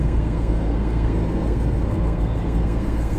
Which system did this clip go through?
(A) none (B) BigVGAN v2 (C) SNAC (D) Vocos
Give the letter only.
C